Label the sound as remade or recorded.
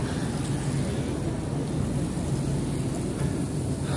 recorded